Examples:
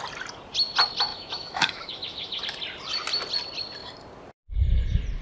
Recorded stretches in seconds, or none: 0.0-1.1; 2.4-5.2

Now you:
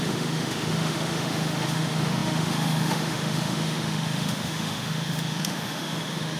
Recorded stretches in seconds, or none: none